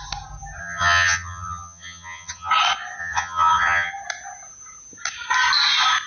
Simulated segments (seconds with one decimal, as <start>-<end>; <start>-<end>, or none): 0.6-2.5; 3.0-3.9